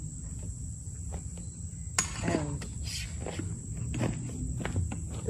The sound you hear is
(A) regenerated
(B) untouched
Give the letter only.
B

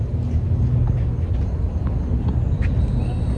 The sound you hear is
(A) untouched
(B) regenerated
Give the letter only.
A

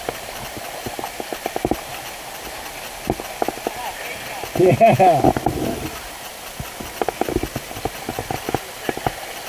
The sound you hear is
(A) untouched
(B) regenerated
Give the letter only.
A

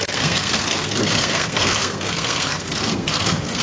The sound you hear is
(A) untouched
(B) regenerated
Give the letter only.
B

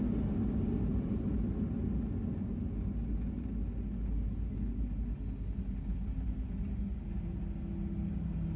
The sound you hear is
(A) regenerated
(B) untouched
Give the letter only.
B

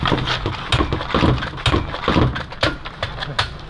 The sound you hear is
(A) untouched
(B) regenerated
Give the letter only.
A